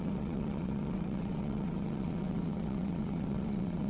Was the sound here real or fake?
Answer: fake